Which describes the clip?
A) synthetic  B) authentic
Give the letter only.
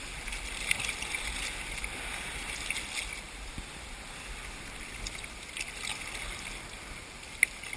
B